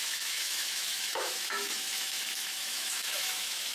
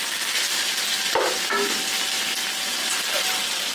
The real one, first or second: second